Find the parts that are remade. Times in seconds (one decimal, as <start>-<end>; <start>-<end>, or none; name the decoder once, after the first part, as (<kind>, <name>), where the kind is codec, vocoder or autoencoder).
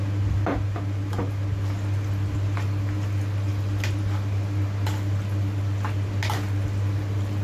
none